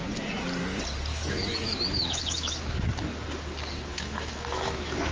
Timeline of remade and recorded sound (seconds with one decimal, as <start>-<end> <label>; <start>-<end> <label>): 0.0-1.1 recorded; 1.1-2.6 remade; 2.6-3.9 recorded; 3.9-5.1 remade